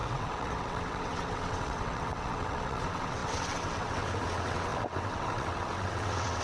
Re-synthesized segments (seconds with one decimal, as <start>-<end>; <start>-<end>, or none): 0.0-6.4